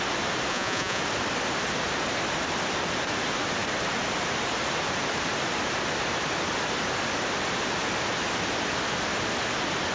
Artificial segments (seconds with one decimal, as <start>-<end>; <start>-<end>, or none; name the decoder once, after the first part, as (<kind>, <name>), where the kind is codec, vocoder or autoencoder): 0.5-1.0 (vocoder, Vocos)